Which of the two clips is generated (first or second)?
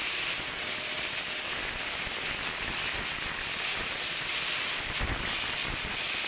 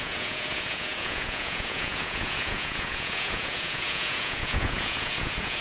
second